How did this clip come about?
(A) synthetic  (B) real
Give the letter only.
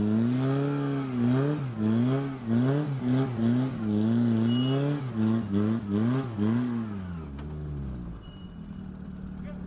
B